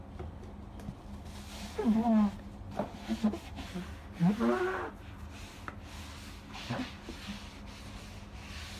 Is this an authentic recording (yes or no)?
yes